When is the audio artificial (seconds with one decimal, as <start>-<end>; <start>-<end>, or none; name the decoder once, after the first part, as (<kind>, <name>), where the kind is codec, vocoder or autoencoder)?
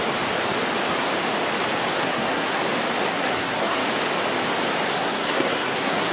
2.0-2.6 (codec, SNAC); 3.1-3.8; 4.9-6.1